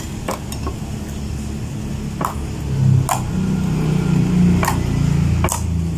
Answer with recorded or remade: recorded